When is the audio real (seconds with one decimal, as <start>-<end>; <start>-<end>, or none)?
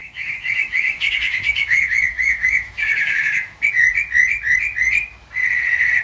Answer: 3.6-6.0